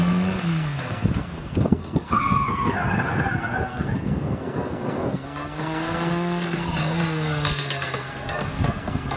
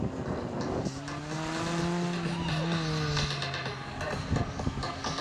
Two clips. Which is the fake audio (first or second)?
first